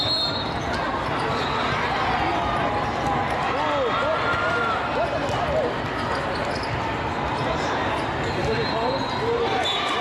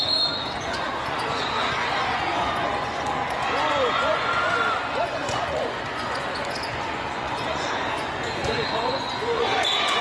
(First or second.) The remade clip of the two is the second